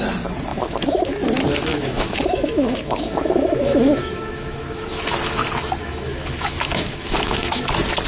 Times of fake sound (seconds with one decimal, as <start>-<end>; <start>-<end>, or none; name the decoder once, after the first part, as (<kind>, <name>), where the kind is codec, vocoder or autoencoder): 0.5-1.1 (autoencoder, DAC-VAE); 1.7-5.0; 5.8-7.6